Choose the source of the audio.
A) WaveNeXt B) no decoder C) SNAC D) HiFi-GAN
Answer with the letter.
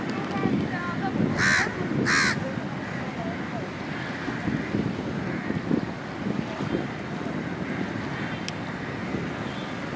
B